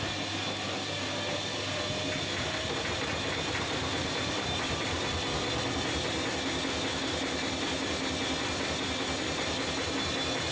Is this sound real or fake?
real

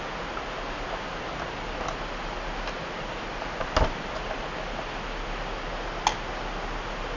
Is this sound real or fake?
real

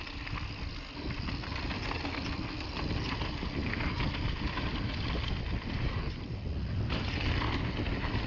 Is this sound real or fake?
real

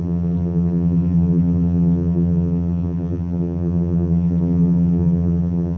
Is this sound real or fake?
fake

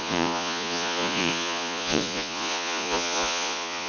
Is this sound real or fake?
fake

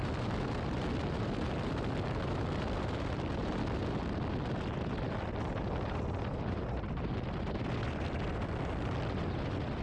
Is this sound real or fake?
real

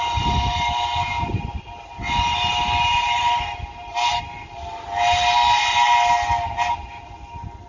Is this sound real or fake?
real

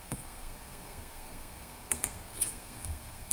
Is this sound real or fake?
fake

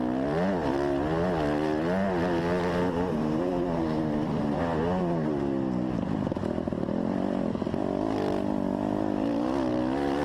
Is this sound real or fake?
real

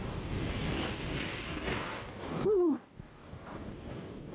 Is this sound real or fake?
fake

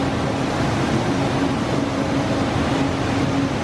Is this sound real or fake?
real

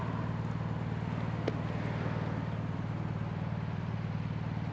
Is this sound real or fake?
real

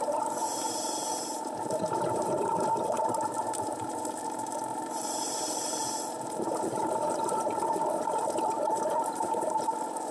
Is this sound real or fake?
fake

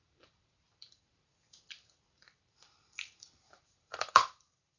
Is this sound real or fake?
fake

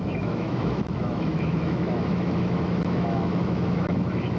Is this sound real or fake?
fake